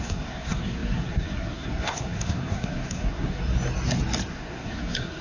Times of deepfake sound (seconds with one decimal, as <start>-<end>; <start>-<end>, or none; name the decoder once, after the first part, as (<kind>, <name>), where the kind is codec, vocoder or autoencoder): 0.0-3.4 (codec, SNAC); 4.3-5.2